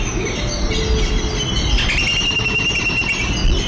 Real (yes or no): yes